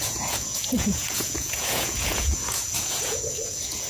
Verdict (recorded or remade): remade